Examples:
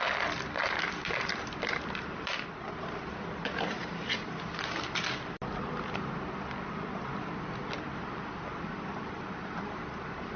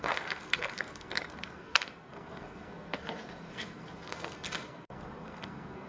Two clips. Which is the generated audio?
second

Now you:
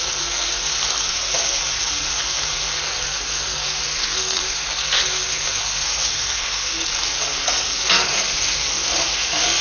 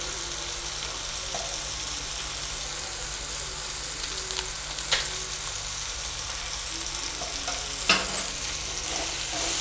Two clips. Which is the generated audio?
first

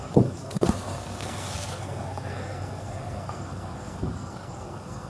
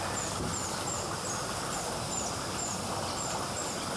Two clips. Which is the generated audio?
first